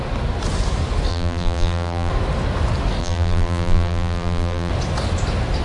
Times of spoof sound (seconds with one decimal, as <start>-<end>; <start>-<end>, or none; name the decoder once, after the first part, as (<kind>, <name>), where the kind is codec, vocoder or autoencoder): 1.1-2.1 (vocoder, BigVGAN v2); 3.0-4.7